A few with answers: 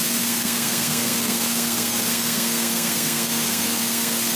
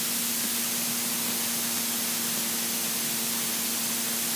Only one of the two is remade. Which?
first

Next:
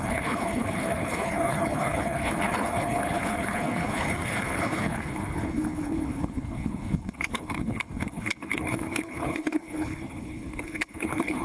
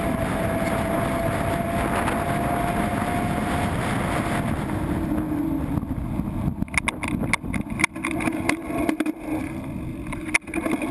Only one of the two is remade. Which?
first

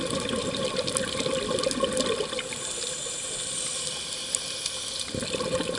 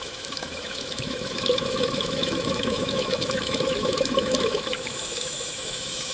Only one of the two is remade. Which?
second